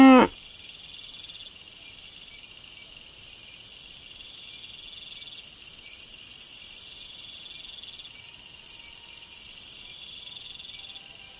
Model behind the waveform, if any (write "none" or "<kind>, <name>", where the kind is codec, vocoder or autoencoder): none